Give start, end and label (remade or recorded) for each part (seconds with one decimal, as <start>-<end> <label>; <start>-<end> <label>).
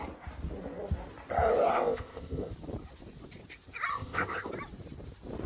0.0-1.7 recorded; 1.7-2.5 remade; 2.5-3.9 recorded; 3.9-4.5 remade; 4.5-5.5 recorded